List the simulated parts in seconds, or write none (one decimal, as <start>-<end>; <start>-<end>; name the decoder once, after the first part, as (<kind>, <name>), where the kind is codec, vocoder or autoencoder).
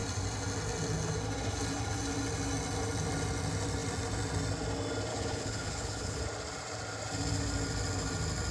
5.1-6.2 (codec, HILCodec)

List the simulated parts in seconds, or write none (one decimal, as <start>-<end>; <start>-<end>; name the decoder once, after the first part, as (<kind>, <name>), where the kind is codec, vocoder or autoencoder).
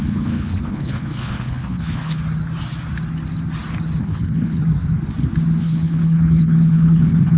0.0-2.2 (codec, HILCodec); 4.0-4.6; 5.6-7.4